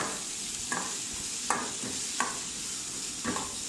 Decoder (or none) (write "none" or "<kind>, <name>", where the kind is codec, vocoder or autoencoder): none